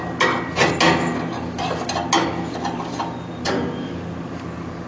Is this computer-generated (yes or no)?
no